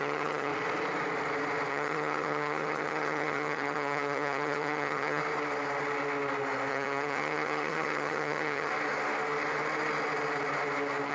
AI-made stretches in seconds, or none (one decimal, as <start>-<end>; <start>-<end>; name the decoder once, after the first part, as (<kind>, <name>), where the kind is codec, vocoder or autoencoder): 0.0-0.5 (vocoder, HiFi-GAN); 1.7-5.2; 6.7-8.7